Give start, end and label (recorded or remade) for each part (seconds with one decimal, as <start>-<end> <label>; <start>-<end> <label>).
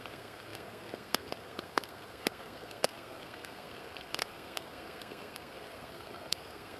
0.0-6.8 remade